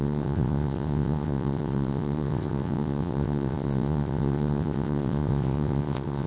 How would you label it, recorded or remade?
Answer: remade